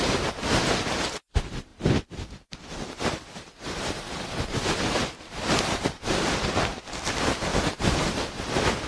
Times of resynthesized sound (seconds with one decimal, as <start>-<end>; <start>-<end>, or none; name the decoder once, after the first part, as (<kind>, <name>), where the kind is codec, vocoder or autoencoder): 0.0-8.9 (vocoder, BigVGAN v2)